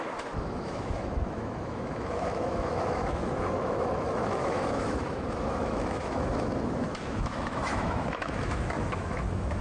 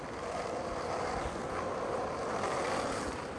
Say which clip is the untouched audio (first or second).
second